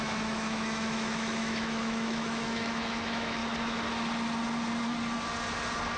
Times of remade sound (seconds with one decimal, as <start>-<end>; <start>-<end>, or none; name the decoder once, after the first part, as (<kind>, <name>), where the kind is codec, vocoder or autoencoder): 0.0-3.4 (autoencoder, DAC-VAE)